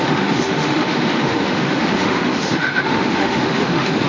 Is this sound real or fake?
fake